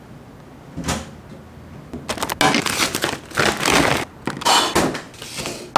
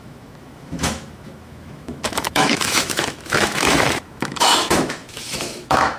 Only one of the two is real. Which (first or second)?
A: first